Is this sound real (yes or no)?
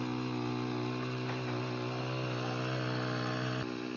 yes